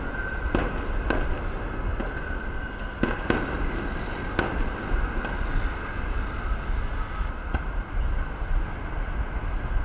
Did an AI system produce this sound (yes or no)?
no